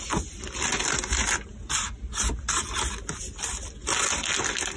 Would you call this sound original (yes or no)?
yes